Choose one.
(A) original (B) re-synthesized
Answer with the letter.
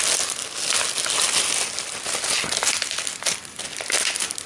A